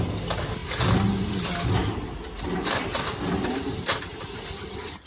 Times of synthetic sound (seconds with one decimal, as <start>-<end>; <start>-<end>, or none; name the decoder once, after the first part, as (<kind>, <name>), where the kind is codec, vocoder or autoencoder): 4.5-5.1 (vocoder, HiFi-GAN)